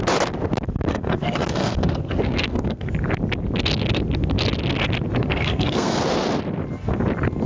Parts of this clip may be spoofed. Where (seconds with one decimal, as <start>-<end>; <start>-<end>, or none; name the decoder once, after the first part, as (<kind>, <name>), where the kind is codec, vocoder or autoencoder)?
0.9-2.9 (codec, SNAC); 5.2-6.0